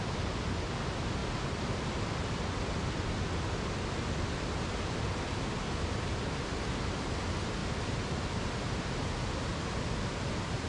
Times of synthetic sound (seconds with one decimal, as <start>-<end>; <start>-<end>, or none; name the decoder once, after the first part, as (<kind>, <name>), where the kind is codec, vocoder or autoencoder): none